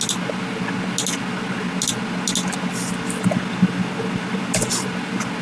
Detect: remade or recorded recorded